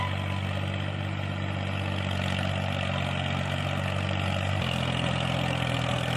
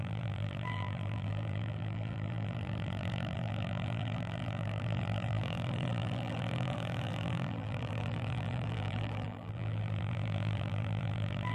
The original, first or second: first